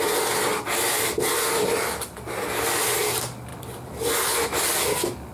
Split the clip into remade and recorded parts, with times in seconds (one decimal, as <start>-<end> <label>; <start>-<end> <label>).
0.0-5.3 recorded